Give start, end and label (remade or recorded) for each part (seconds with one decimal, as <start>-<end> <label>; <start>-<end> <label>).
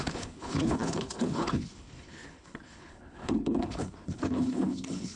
0.0-5.2 remade